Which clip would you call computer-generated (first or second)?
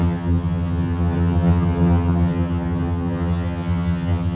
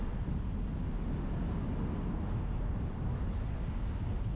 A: first